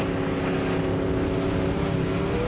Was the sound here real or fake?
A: real